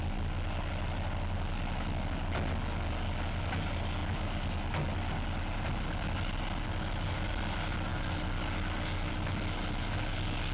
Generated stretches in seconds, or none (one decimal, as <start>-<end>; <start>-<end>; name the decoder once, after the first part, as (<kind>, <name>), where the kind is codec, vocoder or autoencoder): none